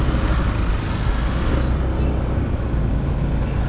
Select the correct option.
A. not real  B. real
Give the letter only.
B